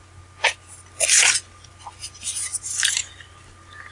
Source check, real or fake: real